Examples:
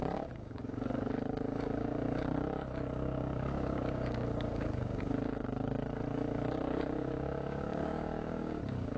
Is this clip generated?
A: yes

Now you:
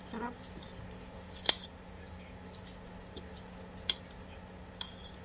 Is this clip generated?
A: no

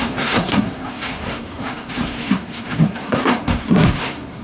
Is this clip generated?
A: yes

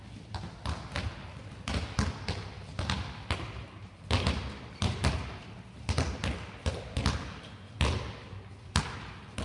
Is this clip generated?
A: no